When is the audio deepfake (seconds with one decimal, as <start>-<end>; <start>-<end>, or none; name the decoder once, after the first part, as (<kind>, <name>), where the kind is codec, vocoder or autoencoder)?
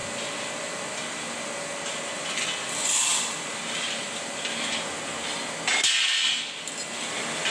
none